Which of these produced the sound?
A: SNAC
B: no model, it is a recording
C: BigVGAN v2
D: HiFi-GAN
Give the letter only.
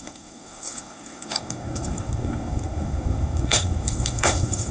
A